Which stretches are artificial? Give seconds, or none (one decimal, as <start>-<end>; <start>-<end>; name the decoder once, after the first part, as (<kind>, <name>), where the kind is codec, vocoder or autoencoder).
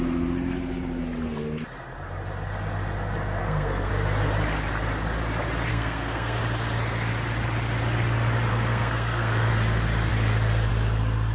3.4-3.9 (codec, SNAC); 5.7-6.4; 8.5-9.5